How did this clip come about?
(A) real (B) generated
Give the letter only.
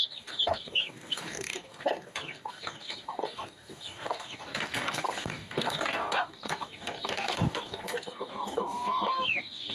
B